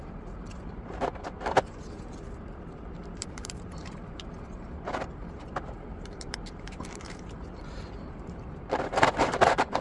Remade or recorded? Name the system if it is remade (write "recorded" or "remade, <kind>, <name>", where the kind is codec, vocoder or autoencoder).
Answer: remade, vocoder, BigVGAN v2